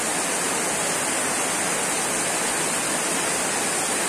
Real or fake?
real